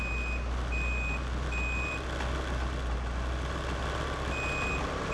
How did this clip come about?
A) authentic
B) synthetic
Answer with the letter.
A